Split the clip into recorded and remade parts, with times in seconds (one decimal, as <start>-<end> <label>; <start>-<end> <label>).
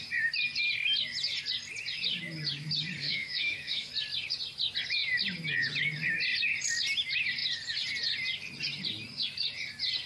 0.0-3.0 recorded; 3.0-3.9 remade; 3.9-10.1 recorded